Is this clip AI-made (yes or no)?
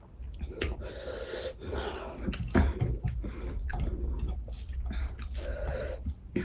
no